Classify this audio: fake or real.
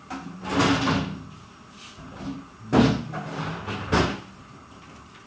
real